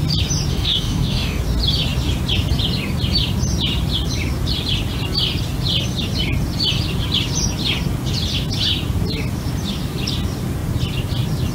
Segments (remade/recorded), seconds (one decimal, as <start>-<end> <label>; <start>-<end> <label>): 0.0-0.5 recorded; 0.5-1.4 remade; 1.4-11.5 recorded